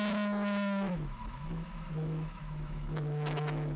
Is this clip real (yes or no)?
no